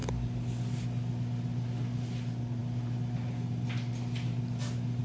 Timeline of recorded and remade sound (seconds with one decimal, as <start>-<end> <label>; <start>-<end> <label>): 0.0-5.0 recorded

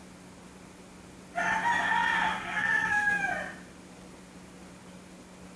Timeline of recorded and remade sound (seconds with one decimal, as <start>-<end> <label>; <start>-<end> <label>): 0.0-2.4 recorded; 2.4-3.2 remade; 3.2-5.6 recorded

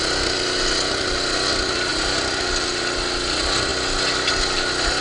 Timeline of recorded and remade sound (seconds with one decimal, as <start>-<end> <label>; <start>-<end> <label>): 0.0-5.0 recorded

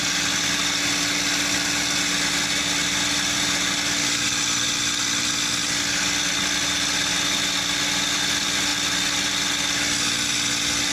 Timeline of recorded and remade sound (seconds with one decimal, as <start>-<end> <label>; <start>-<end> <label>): 0.0-10.9 recorded

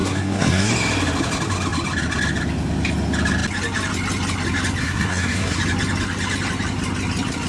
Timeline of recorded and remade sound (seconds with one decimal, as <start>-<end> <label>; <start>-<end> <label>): 0.0-0.7 remade; 0.7-4.8 recorded; 4.8-5.6 remade; 5.6-7.5 recorded

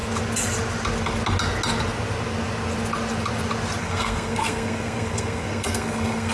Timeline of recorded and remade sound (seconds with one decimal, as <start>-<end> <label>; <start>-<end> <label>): 0.0-3.8 recorded; 3.8-6.3 remade